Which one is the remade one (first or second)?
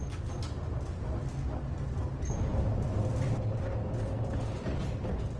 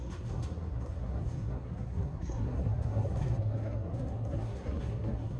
second